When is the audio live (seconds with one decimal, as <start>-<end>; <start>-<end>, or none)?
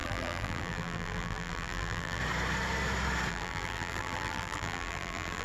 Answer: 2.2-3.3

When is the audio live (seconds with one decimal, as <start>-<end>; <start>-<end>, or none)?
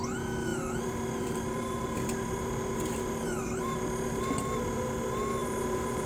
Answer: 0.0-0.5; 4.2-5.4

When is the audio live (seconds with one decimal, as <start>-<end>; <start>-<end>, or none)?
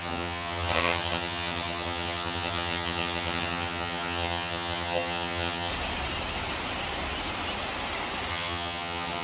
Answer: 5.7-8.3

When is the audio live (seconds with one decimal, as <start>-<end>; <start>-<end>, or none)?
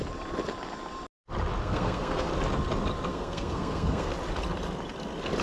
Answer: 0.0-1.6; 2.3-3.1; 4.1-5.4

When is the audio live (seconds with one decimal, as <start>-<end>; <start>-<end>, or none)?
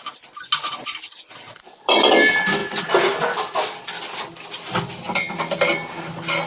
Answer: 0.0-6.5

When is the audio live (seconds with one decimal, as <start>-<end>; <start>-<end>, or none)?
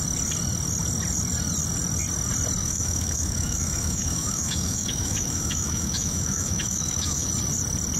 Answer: 0.0-2.6; 7.3-8.0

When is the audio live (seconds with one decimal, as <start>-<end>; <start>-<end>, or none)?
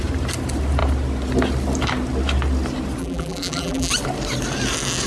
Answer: 0.0-3.0; 3.9-5.1